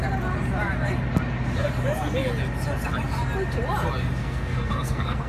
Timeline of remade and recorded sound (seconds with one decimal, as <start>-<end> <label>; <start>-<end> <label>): 0.0-4.2 recorded; 4.2-5.3 remade